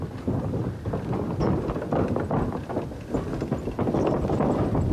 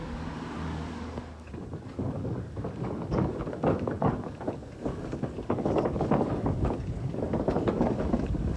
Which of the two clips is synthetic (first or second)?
second